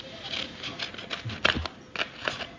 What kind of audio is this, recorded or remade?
recorded